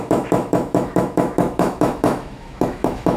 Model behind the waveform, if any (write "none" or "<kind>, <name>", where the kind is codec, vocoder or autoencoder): autoencoder, DAC-VAE